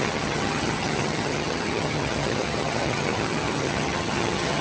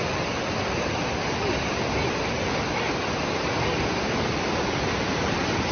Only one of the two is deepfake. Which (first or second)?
first